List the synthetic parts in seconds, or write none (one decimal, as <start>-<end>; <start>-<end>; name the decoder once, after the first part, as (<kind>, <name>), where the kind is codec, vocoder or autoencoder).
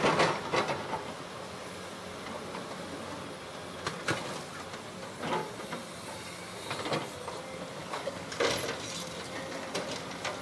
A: 7.8-8.3 (codec, DAC)